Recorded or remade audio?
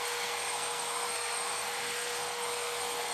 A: remade